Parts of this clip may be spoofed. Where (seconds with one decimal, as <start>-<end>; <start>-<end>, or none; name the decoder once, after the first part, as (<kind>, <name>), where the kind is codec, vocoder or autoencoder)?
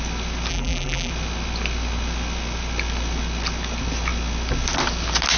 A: 0.5-1.1 (vocoder, BigVGAN v2)